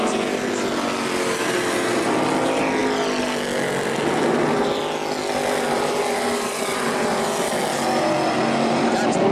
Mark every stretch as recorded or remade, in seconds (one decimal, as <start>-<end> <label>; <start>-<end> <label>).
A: 0.0-9.3 recorded